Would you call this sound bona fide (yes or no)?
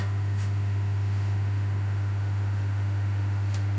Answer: no